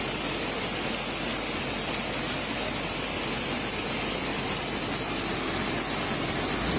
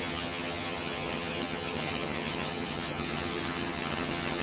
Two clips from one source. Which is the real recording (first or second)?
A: first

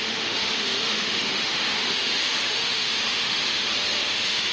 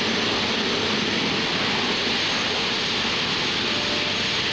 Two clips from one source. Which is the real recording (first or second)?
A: second